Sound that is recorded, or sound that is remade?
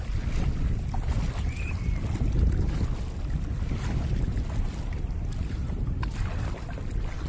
recorded